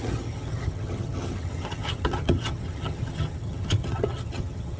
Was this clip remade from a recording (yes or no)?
yes